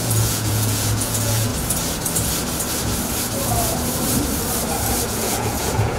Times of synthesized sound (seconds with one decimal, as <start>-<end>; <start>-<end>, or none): 0.0-1.5; 5.1-6.0